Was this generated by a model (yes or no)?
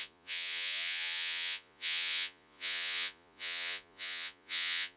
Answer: yes